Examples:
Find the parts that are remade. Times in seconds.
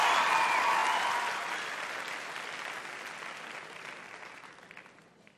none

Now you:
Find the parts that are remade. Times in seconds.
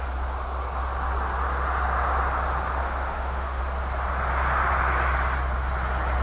2.8-3.6 (autoencoder, DAC-VAE)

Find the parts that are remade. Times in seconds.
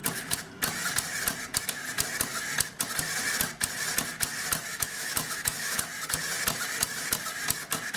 4.7-5.8 (autoencoder, DAC-VAE)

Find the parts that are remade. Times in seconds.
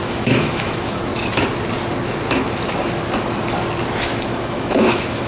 0.0-1.1 (autoencoder, DAC-VAE); 4.0-5.3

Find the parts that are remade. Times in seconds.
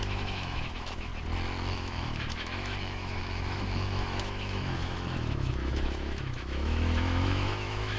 0.0-1.1 (autoencoder, DAC-VAE); 1.7-8.0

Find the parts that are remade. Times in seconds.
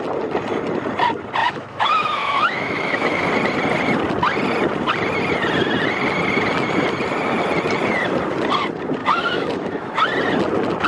1.4-3.3 (autoencoder, DAC-VAE); 9.0-10.0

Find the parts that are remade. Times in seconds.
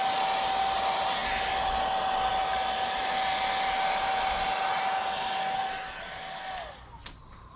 none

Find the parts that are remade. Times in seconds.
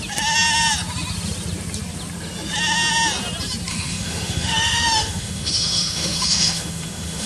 3.7-7.3 (autoencoder, DAC-VAE)